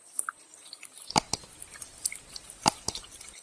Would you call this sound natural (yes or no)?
yes